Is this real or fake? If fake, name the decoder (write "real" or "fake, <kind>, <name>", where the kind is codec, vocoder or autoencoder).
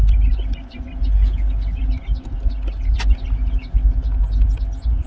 real